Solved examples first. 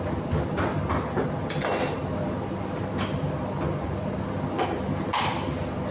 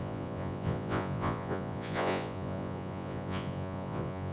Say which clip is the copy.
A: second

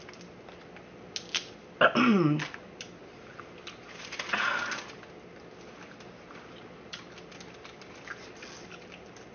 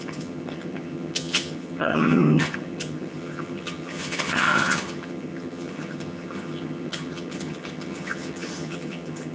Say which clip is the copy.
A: second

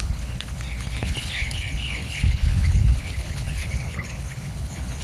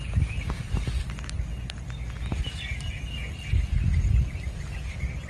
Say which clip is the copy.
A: first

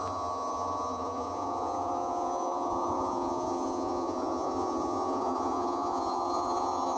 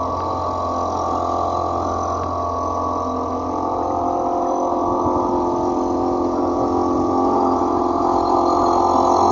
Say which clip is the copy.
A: first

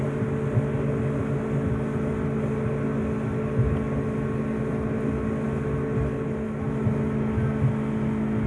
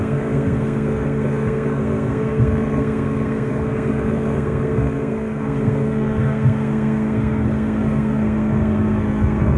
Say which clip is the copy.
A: second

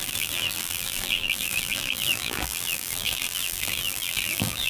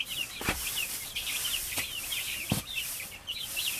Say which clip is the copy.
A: first